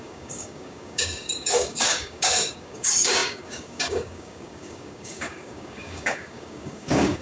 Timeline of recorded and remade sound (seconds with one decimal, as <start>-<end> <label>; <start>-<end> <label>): 0.0-7.2 remade